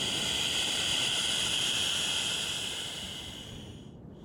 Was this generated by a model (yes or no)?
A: yes